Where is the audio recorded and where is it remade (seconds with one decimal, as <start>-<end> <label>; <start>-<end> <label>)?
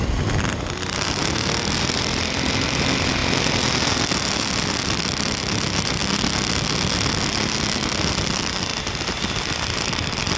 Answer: 0.0-3.2 remade; 3.2-4.0 recorded; 4.0-6.0 remade; 6.0-8.1 recorded; 8.1-10.4 remade